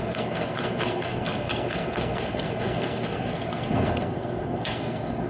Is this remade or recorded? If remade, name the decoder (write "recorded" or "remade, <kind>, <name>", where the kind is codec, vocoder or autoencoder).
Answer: remade, codec, SNAC